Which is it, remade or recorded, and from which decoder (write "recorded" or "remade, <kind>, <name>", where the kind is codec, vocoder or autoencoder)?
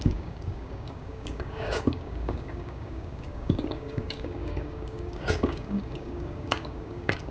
remade, codec, DAC